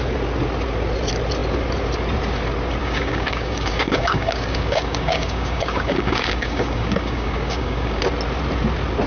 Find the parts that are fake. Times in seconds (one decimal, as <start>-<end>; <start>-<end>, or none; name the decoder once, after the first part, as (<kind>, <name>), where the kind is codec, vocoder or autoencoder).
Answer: 2.8-8.0 (codec, DAC)